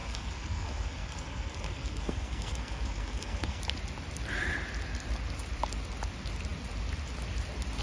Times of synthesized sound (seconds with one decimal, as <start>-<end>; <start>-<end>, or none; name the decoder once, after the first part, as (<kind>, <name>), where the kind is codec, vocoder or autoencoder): 0.0-3.6 (codec, SNAC)